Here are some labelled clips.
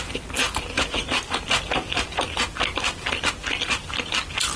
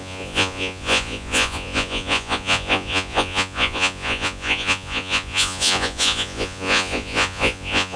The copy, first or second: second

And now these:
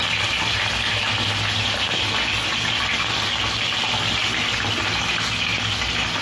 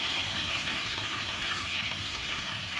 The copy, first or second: second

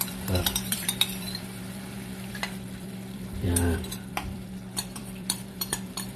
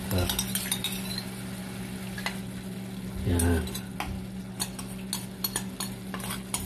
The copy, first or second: first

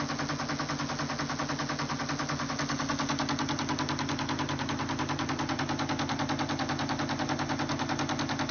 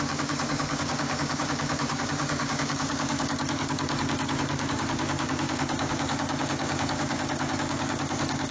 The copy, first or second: second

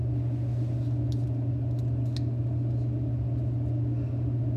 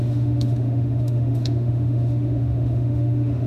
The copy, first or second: second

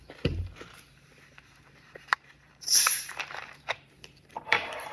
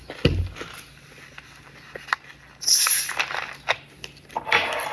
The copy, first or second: first